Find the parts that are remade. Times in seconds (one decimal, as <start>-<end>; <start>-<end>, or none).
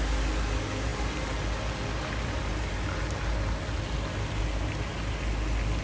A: none